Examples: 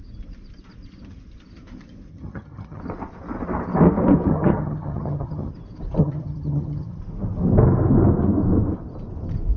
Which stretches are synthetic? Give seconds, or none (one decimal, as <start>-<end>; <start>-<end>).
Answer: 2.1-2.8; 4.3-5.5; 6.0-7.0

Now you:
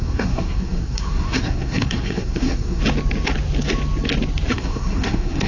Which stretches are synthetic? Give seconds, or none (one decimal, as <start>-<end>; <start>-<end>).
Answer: 0.0-2.8; 4.5-5.5

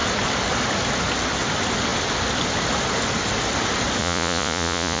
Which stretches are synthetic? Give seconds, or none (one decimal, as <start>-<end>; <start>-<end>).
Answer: 4.0-5.0